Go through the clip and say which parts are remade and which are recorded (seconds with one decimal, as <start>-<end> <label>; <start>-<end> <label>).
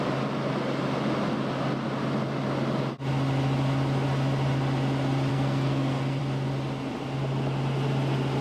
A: 0.0-5.3 recorded; 5.3-6.2 remade; 6.2-8.4 recorded